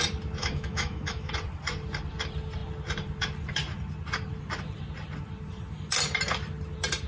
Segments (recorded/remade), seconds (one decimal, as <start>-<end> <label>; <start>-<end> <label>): 0.0-0.4 recorded; 0.4-1.3 remade; 1.3-7.1 recorded